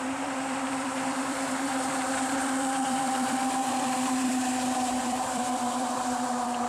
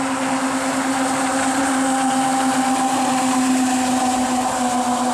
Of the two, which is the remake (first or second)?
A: first